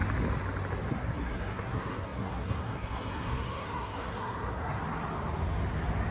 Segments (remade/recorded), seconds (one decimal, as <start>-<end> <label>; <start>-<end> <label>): 0.0-0.9 recorded; 0.9-4.8 remade; 4.8-6.1 recorded